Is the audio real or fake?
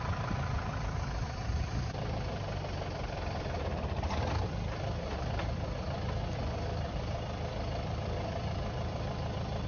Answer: fake